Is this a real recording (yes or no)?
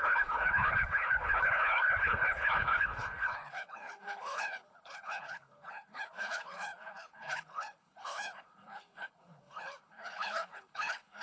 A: no